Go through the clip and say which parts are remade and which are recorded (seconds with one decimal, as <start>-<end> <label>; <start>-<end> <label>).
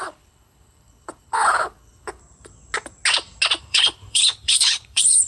0.0-2.2 remade; 2.2-3.6 recorded; 3.6-5.3 remade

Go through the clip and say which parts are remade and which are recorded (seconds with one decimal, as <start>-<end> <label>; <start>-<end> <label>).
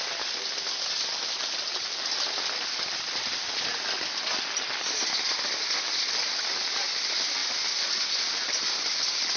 0.0-7.4 recorded; 7.4-9.4 remade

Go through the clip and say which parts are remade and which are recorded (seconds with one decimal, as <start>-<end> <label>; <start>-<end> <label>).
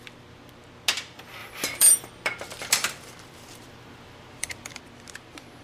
0.0-1.4 recorded; 1.4-4.8 remade; 4.8-5.6 recorded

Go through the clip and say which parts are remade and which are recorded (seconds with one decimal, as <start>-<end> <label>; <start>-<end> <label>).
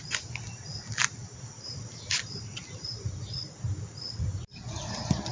0.0-5.3 recorded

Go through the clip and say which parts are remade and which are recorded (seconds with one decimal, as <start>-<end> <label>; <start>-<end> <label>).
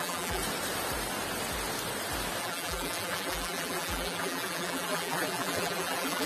0.0-0.4 remade; 0.4-2.4 recorded; 2.4-6.3 remade